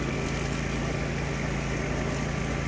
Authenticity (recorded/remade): recorded